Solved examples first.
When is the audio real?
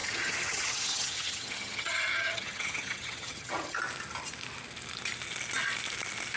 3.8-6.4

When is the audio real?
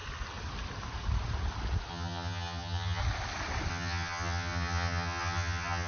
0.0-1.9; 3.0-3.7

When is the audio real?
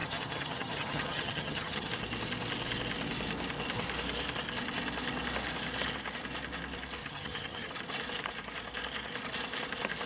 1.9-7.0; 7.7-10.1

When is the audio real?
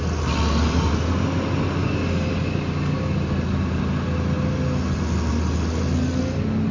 0.0-6.7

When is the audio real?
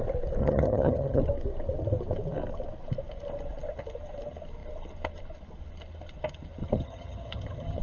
0.0-0.4; 1.2-6.6